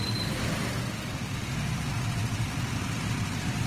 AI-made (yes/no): no